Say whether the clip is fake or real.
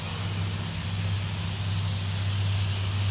real